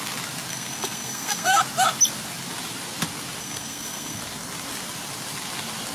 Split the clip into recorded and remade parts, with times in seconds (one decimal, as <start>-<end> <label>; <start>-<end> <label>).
0.0-0.5 recorded; 0.5-1.6 remade; 1.6-3.4 recorded; 3.4-4.2 remade; 4.2-5.9 recorded